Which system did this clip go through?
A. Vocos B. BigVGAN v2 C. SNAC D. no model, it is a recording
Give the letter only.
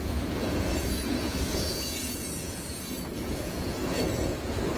A